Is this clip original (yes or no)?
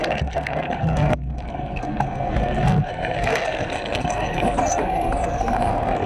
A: no